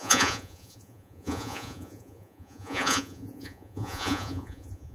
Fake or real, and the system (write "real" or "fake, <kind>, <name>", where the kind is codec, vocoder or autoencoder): fake, vocoder, Vocos